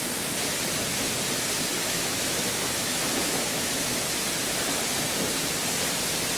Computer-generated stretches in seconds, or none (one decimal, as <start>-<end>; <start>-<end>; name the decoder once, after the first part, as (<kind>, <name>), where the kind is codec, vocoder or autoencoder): 1.8-3.8 (autoencoder, DAC-VAE)